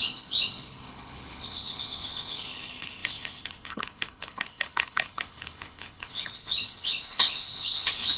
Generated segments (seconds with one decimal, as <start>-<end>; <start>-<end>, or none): 0.0-8.2